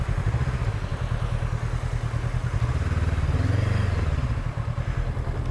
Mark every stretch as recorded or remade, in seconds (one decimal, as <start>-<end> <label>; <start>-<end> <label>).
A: 0.0-5.5 recorded